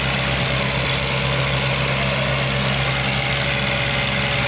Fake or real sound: real